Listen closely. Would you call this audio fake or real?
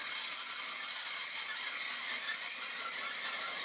real